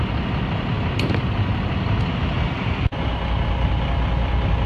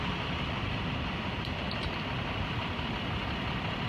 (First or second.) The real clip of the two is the first